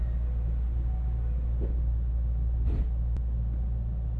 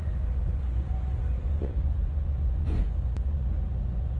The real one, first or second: first